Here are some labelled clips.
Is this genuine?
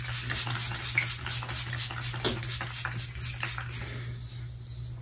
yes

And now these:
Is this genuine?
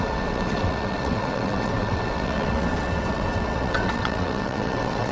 no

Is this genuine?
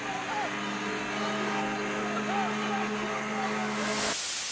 yes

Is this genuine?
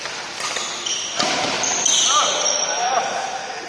yes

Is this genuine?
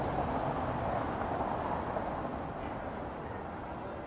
yes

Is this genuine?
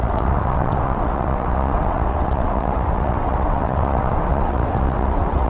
no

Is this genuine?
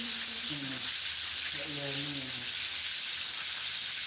yes